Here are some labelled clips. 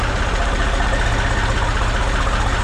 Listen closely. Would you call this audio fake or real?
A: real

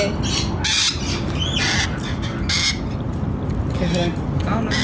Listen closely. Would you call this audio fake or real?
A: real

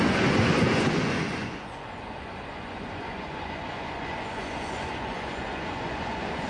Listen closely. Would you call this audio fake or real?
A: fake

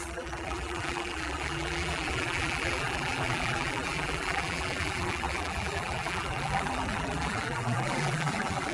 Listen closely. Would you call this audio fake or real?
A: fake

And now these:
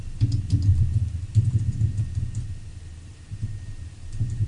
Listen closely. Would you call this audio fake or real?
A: real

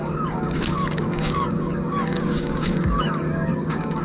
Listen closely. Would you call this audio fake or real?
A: fake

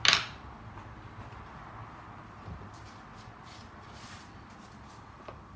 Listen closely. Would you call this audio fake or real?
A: real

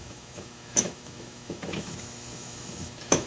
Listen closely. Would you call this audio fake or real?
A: fake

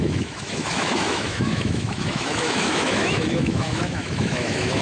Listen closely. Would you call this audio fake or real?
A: fake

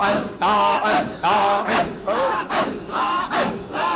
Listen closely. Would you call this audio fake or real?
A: fake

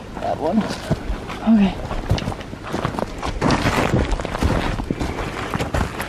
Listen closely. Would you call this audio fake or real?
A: real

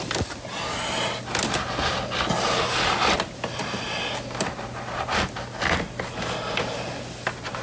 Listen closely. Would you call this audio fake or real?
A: real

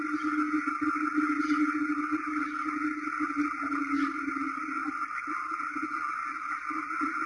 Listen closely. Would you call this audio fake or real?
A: real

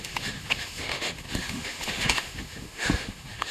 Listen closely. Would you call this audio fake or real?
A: fake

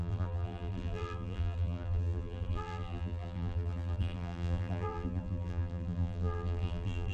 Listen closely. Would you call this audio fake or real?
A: fake